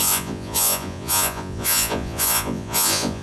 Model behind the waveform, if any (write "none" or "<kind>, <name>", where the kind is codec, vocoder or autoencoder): vocoder, Vocos